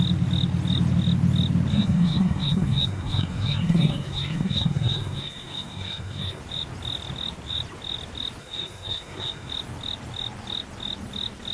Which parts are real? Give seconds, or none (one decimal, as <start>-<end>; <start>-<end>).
0.0-1.7; 6.4-8.4; 9.5-11.5